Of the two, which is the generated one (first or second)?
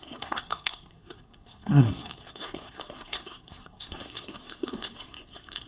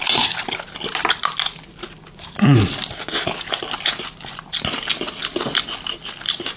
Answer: first